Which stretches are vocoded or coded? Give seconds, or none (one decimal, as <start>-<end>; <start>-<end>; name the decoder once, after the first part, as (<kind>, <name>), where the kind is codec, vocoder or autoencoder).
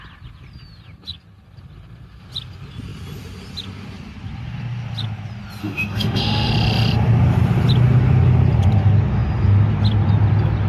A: 5.6-6.5 (autoencoder, DAC-VAE)